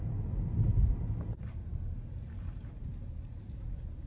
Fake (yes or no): no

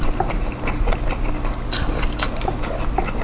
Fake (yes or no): no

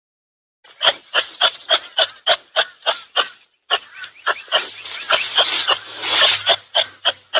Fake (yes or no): no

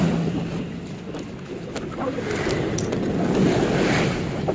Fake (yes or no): no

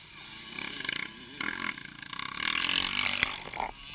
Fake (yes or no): no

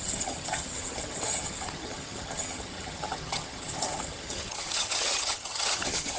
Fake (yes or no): yes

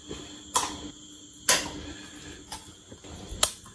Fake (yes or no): no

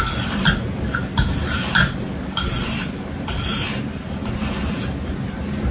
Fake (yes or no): no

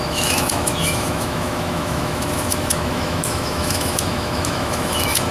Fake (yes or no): yes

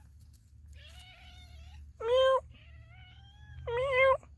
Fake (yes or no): no